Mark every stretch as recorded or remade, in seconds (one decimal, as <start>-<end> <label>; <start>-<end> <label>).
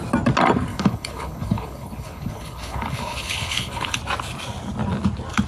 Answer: 0.0-0.7 recorded; 0.7-4.0 remade; 4.0-5.5 recorded